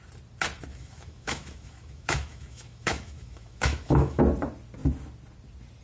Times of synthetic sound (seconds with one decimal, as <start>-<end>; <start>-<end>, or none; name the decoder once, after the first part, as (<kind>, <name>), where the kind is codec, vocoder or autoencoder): 0.7-4.2 (autoencoder, DAC-VAE)